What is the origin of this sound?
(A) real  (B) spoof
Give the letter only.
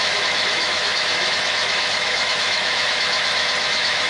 B